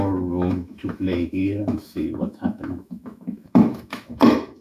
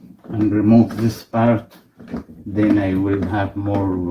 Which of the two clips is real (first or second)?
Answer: second